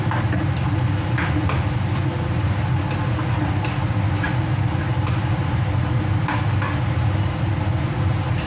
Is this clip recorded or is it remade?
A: recorded